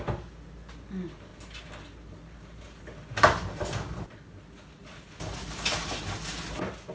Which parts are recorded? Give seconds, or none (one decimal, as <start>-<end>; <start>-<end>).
0.0-6.9